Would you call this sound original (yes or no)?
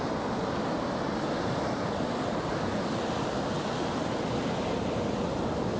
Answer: yes